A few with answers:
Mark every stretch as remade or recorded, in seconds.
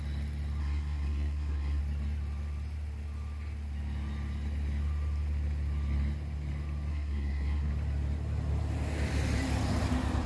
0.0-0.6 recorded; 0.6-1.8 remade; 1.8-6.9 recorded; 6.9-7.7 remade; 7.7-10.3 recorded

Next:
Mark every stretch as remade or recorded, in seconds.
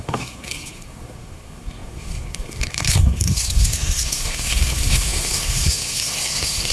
0.0-6.7 remade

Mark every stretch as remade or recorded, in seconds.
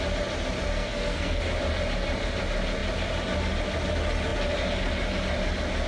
0.0-0.7 recorded; 0.7-1.4 remade; 1.4-5.9 recorded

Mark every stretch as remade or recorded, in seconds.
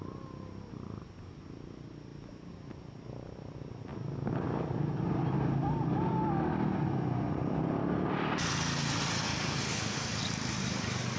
0.0-11.2 recorded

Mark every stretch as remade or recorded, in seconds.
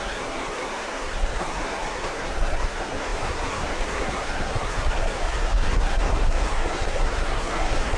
0.0-8.0 remade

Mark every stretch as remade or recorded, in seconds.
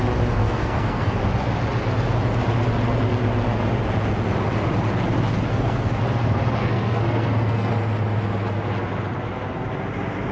0.0-0.4 recorded; 0.4-1.2 remade; 1.2-5.5 recorded; 5.5-6.0 remade; 6.0-6.6 recorded; 6.6-7.7 remade; 7.7-10.3 recorded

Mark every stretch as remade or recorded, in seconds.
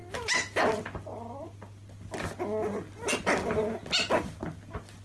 0.0-5.0 recorded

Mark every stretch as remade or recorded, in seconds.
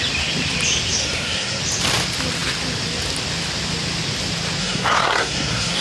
0.0-1.0 recorded; 1.0-1.6 remade; 1.6-4.6 recorded; 4.6-5.8 remade